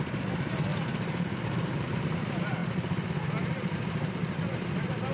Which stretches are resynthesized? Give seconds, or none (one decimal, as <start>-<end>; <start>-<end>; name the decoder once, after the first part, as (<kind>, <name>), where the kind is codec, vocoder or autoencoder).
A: none